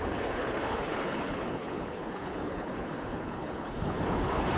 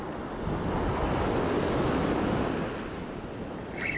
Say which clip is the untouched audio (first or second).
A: second